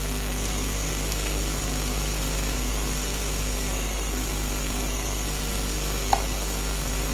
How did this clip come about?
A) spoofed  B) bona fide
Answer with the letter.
A